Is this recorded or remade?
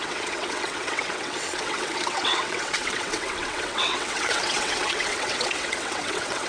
remade